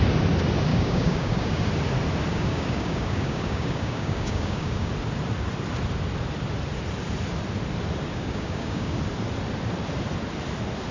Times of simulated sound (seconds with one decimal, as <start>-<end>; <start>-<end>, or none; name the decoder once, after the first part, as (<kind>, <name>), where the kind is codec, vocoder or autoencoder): 0.7-1.6 (codec, DAC); 2.3-4.9; 8.1-9.0